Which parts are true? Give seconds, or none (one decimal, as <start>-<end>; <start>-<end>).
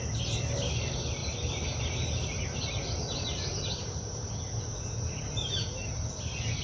0.0-6.6